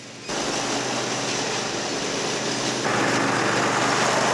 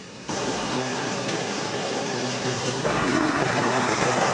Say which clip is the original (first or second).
first